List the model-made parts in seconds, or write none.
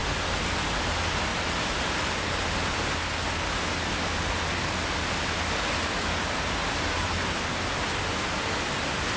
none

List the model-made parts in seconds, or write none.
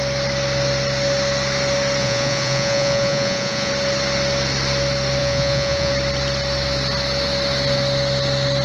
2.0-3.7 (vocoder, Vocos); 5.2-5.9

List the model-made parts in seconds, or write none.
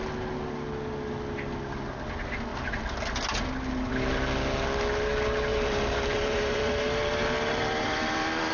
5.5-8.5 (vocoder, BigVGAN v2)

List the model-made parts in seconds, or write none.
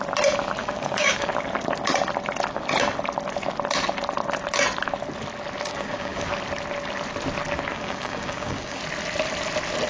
0.6-1.3 (codec, DAC); 5.7-6.3; 7.7-8.8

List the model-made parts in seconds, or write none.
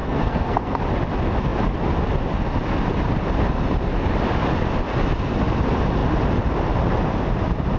0.0-0.8 (codec, SNAC)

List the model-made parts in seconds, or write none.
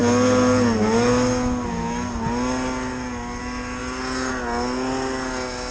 none